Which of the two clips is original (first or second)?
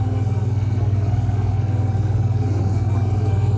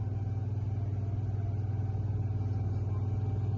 second